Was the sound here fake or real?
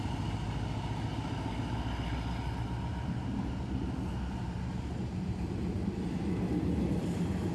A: real